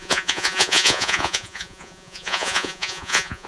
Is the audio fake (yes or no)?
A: yes